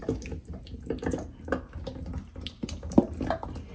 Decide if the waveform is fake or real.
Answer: real